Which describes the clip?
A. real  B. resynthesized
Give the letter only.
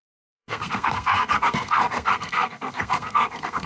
B